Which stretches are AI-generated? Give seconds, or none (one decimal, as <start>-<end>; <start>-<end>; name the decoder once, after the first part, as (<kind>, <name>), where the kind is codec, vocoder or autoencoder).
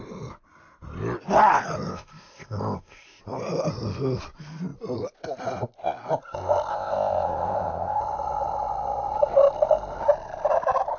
1.9-3.2 (codec, ZipCodec); 6.7-8.0